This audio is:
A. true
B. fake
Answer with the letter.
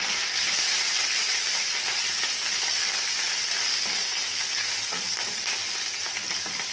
A